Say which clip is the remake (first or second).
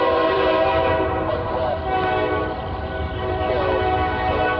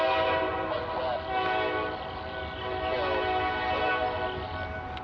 first